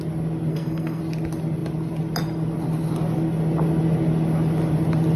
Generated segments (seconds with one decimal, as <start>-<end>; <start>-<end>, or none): 0.5-1.0